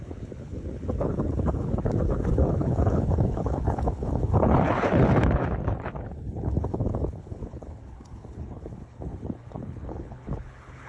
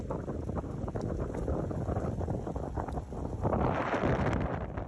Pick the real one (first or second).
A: second